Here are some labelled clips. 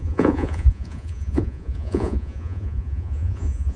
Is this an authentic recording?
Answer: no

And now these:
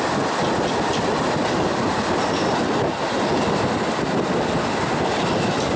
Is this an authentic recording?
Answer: yes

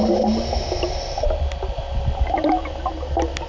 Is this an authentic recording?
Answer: yes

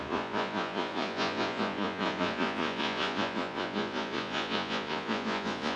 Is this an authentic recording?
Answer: no